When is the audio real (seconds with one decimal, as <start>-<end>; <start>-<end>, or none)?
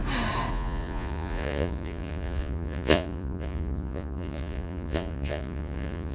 0.0-0.5